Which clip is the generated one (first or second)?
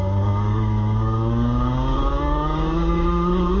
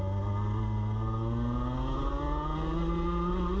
first